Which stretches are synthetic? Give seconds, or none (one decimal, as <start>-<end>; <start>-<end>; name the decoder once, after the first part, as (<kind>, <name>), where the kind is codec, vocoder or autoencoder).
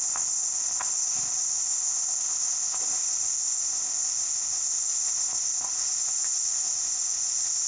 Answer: 0.0-7.7 (codec, ZipCodec)